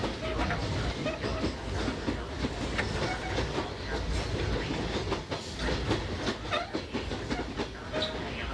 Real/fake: real